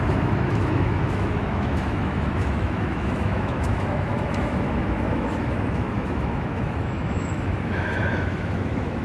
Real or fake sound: fake